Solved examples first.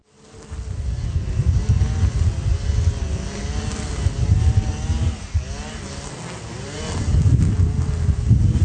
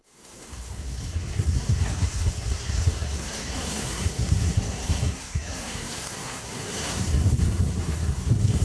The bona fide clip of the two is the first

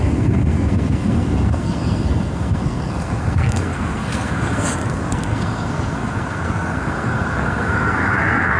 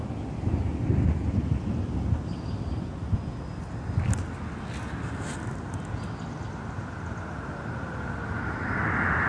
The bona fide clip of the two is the second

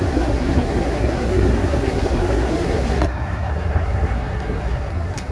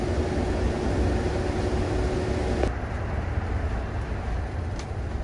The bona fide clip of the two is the second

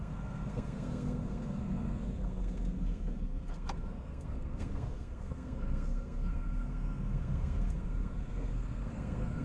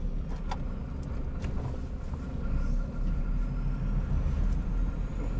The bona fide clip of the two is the second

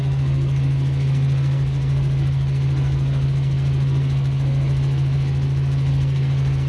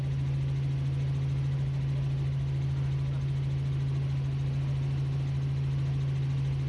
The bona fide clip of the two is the second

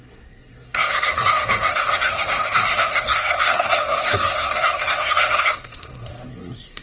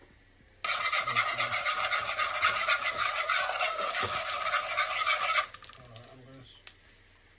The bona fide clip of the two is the second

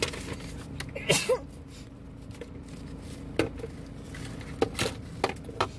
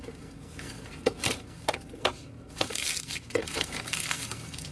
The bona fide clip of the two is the first